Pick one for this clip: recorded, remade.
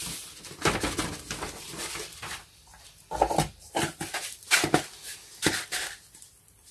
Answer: recorded